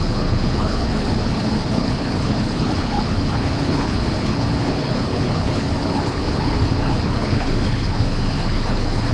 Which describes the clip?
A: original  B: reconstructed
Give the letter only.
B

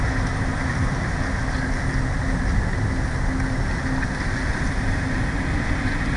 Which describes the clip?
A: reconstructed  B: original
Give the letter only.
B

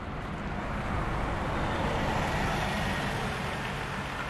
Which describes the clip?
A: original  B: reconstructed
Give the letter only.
A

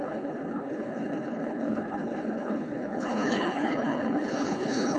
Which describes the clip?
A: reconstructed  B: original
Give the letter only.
A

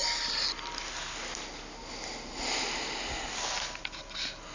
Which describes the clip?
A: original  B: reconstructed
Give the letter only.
A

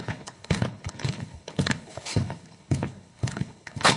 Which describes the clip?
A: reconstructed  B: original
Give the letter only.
A